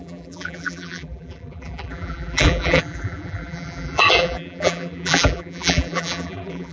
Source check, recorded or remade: remade